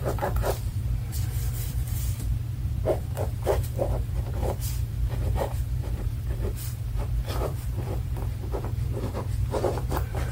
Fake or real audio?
fake